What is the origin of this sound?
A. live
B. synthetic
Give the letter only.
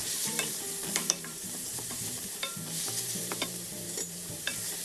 B